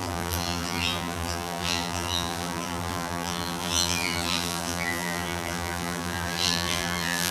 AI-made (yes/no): yes